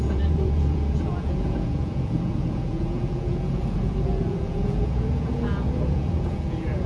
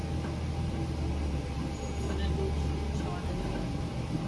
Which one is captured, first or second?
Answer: second